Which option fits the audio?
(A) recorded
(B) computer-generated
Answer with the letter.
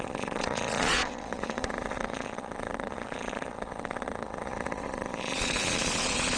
B